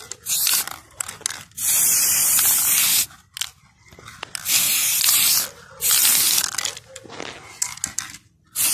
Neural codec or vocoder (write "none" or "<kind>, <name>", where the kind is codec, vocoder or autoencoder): none